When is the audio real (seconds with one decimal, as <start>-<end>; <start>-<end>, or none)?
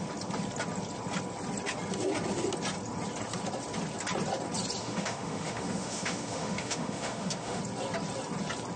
0.0-4.8; 7.6-8.8